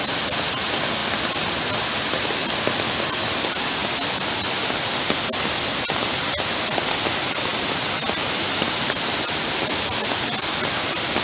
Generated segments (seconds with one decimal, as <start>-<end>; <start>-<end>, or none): 1.0-2.0; 3.8-6.6; 7.5-9.4